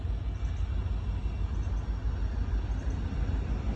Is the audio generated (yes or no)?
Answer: no